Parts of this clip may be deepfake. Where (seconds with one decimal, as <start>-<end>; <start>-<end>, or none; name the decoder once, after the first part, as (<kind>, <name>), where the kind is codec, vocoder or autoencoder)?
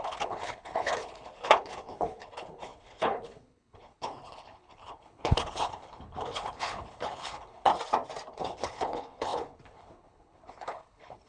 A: 0.0-7.7 (codec, HILCodec); 8.3-11.3